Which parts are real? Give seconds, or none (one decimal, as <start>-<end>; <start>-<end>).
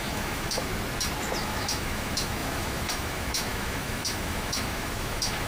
0.7-1.4